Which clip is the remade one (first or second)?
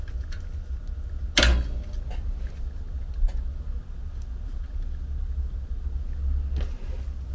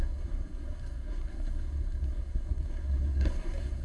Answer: second